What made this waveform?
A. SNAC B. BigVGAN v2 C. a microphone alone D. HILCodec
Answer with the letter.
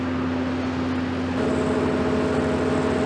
C